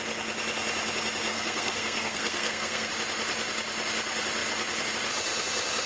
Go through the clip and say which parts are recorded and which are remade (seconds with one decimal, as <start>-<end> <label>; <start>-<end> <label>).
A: 0.0-1.3 recorded; 1.3-2.9 remade; 2.9-5.9 recorded